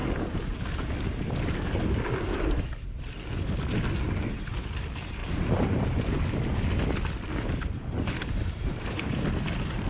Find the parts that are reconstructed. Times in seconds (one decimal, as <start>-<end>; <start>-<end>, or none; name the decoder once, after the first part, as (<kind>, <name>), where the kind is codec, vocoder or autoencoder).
5.2-6.2 (vocoder, BigVGAN v2); 8.4-9.1